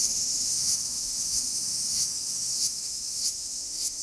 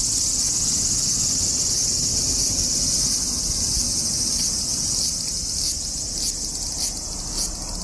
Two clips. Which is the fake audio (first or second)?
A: first